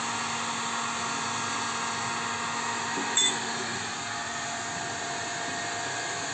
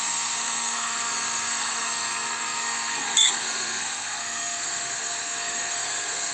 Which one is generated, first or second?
second